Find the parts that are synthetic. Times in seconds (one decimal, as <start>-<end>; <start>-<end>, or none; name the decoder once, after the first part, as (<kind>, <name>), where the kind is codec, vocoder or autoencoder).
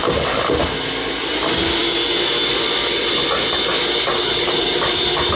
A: none